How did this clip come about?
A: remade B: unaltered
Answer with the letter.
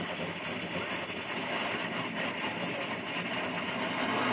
B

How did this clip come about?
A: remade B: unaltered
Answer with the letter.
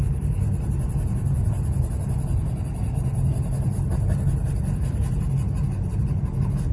B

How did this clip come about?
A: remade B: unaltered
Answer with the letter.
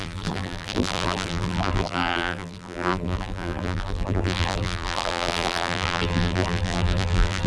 A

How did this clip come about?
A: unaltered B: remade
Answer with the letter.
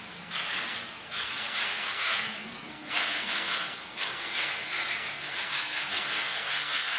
B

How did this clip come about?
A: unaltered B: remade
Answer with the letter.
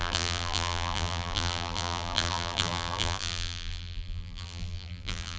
B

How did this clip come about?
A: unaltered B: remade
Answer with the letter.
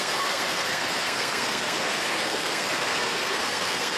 B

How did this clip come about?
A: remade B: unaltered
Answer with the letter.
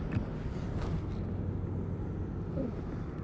B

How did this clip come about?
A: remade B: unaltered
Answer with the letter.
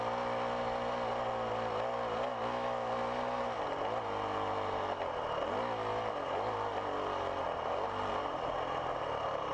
B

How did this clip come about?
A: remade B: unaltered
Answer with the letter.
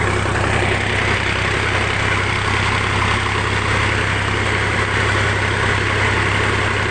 B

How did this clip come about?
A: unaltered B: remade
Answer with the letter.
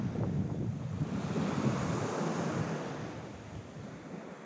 A